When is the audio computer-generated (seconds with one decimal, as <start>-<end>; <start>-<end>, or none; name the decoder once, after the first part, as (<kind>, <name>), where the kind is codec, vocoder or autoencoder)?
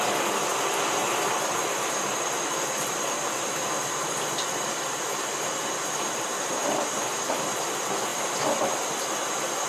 0.0-0.5 (vocoder, BigVGAN v2); 1.3-9.7